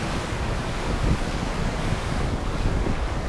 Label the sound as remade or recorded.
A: remade